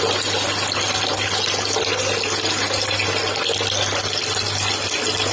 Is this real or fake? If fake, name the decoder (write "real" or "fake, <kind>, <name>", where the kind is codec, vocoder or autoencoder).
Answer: real